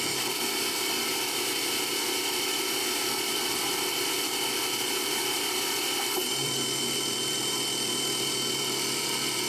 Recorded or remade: remade